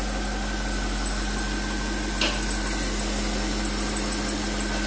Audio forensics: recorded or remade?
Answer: recorded